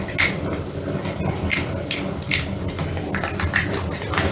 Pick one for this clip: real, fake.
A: real